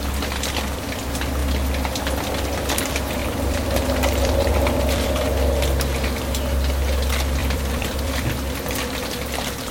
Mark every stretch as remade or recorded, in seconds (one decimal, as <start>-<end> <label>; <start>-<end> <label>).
0.0-3.2 recorded; 3.2-5.1 remade; 5.1-7.4 recorded; 7.4-8.3 remade; 8.3-9.7 recorded